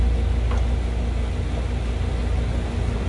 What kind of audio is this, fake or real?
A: real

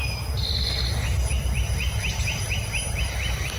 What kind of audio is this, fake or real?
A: real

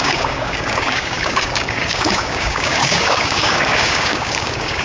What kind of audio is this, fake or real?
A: fake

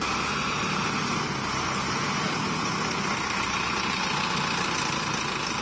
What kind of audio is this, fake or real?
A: real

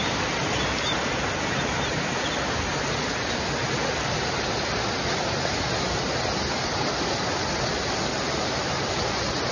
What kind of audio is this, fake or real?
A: real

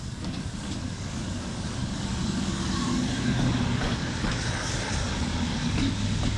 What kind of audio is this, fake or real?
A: fake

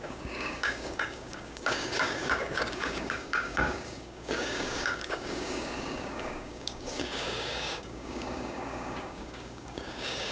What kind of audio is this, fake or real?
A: fake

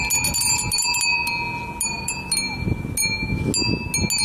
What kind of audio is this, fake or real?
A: real